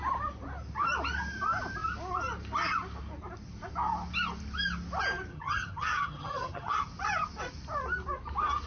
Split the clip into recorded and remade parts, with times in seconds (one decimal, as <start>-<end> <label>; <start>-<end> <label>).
0.0-5.3 recorded; 5.3-6.7 remade; 6.7-8.7 recorded